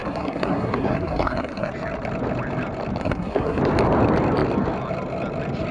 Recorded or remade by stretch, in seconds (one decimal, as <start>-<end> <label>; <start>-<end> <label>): 0.0-1.7 remade; 1.7-3.0 recorded; 3.0-3.6 remade; 3.6-5.7 recorded